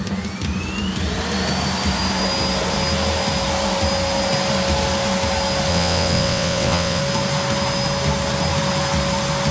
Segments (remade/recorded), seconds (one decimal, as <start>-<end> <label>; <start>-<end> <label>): 0.0-5.7 recorded; 5.7-7.0 remade; 7.0-9.5 recorded